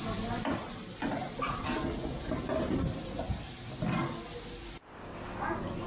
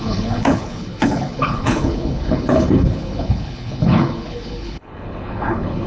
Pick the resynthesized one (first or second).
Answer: second